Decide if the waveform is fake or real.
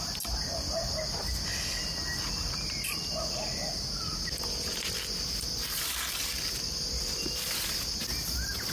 real